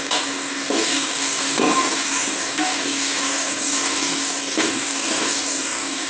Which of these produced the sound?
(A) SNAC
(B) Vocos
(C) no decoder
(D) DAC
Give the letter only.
D